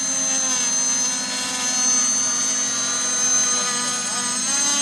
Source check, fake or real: real